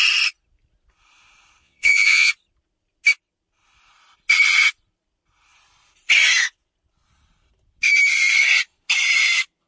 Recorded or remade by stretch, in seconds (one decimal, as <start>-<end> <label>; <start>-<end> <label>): 0.0-1.6 recorded; 1.6-2.3 remade; 2.3-9.7 recorded